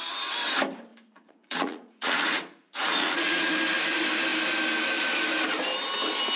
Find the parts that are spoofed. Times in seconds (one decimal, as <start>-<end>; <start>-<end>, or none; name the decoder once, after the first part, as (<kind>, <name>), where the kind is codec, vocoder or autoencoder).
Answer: 0.9-3.5 (vocoder, Vocos)